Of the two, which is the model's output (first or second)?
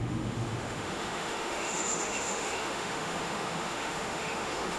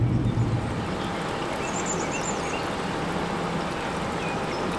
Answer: first